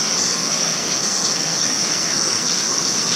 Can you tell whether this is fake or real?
fake